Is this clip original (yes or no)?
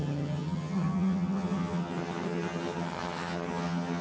no